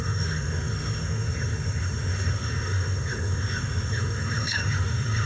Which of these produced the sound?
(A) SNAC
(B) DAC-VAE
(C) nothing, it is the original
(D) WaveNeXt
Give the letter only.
B